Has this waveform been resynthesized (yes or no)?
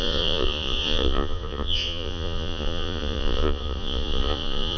yes